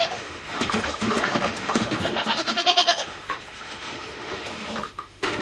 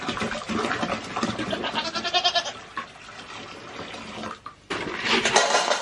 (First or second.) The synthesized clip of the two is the first